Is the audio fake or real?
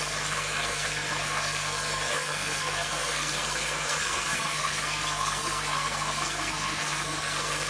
fake